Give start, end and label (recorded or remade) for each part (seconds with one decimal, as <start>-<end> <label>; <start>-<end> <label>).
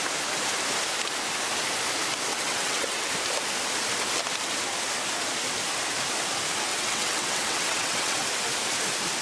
0.0-2.3 recorded; 2.3-3.1 remade; 3.1-6.7 recorded; 6.7-8.2 remade; 8.2-9.2 recorded